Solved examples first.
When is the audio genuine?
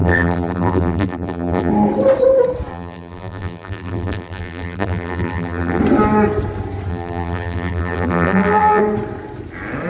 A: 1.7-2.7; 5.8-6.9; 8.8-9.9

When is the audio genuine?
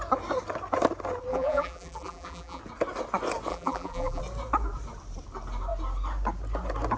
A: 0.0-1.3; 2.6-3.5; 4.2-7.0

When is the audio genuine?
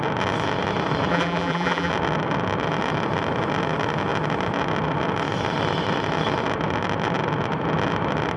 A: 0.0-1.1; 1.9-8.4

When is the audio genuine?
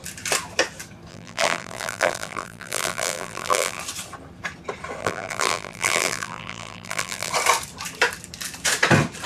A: 0.0-1.1; 3.8-5.0; 7.3-9.3